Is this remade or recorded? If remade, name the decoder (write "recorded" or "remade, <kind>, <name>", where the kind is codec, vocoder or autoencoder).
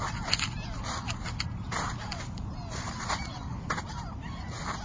recorded